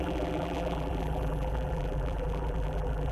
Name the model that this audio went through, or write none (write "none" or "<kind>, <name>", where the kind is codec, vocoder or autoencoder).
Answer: vocoder, BigVGAN v2